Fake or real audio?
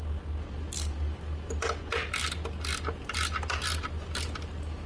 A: real